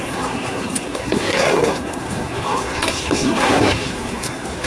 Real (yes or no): no